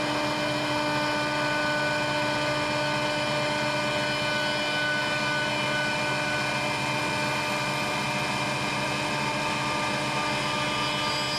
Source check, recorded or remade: recorded